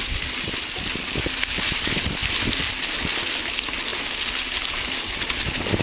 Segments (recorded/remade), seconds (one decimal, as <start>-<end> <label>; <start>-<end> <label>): 0.0-5.8 recorded